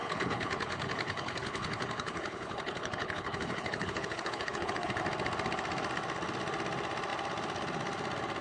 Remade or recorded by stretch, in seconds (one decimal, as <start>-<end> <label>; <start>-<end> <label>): 0.0-5.0 remade; 5.0-8.4 recorded